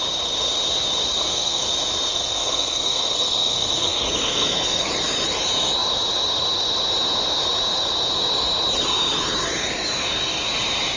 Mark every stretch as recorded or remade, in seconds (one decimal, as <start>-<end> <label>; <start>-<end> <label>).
0.0-1.2 recorded; 1.2-1.7 remade; 1.7-2.1 recorded; 2.1-4.9 remade; 4.9-11.0 recorded